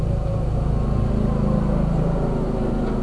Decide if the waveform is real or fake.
fake